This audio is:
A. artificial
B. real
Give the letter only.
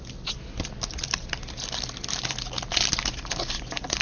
B